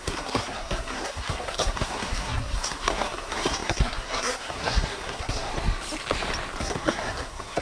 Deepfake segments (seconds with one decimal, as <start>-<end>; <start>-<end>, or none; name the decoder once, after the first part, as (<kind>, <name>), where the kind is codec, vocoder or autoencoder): 0.0-5.5 (codec, SNAC); 6.6-7.6